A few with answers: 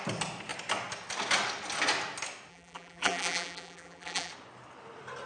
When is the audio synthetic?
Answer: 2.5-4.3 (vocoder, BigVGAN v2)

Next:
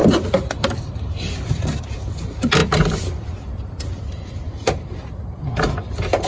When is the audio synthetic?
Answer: none

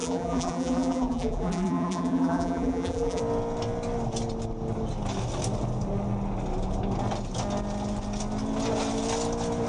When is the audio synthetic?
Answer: 0.0-3.2 (vocoder, BigVGAN v2)

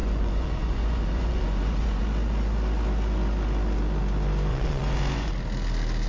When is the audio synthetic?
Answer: 0.0-2.0 (vocoder, Vocos); 4.5-5.3

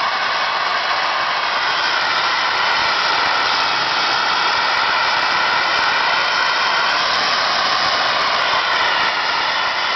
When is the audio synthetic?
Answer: none

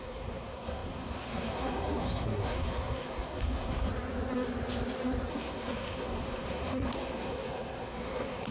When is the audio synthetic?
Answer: 0.0-3.9 (codec, SNAC); 5.3-8.5